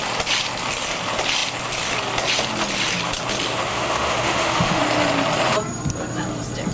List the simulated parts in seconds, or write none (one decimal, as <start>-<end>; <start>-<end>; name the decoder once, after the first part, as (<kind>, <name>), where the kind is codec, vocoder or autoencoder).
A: 3.7-4.8 (autoencoder, DAC-VAE)